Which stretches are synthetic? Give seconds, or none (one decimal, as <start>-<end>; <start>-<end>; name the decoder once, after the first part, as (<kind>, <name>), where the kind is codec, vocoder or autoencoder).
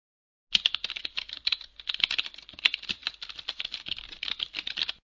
none